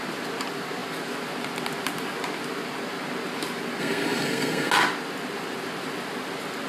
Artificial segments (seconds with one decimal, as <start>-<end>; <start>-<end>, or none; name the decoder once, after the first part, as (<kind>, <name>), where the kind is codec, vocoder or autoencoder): 3.8-4.7 (codec, SNAC)